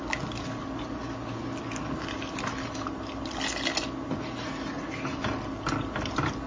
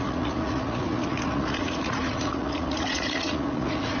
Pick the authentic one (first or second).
first